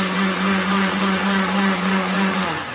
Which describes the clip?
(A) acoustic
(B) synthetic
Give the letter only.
B